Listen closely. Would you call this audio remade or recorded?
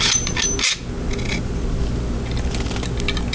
recorded